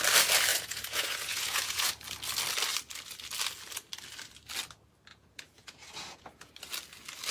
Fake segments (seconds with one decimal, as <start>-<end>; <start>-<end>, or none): 0.5-1.9; 5.1-6.5